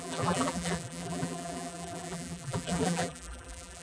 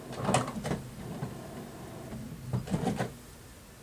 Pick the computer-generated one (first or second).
first